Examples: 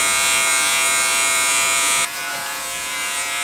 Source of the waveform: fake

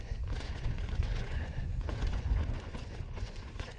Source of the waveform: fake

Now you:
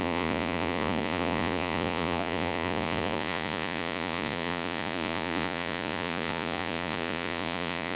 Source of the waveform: fake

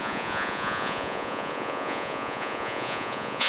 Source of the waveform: fake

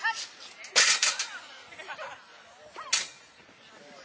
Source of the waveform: real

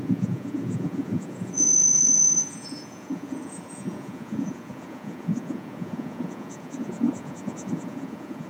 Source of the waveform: fake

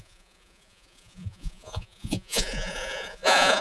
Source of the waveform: fake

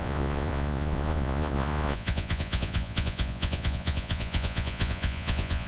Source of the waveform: fake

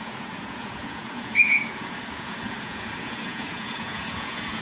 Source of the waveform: fake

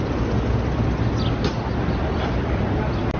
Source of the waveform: real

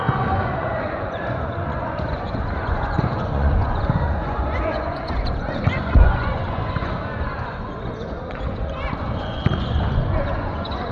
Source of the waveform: fake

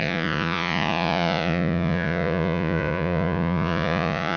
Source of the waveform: fake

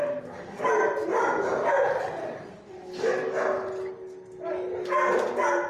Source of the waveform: real